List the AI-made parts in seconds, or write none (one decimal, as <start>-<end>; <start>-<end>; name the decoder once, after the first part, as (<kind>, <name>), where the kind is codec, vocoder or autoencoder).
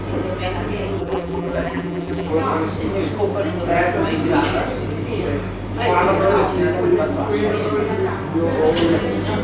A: 1.0-2.3 (vocoder, BigVGAN v2)